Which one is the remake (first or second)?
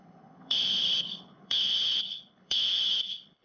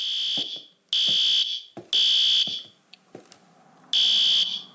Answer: first